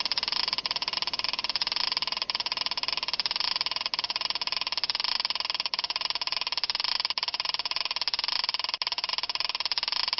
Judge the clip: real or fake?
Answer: real